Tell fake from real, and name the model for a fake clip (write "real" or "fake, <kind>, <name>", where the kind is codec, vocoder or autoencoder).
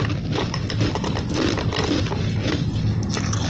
real